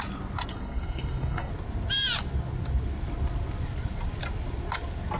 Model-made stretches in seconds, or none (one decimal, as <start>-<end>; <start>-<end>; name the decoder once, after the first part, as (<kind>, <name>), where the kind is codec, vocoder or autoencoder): 0.5-1.5 (codec, SNAC)